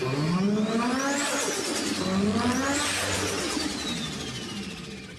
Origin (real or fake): real